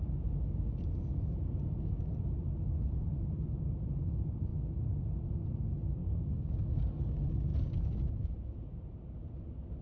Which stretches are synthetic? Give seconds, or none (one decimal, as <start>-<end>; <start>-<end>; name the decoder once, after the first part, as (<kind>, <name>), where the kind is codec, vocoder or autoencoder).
6.0-6.6 (codec, DAC)